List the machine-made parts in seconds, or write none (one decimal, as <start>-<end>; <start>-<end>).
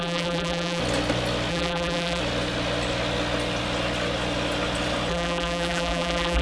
0.0-0.8; 1.5-2.2; 5.1-6.4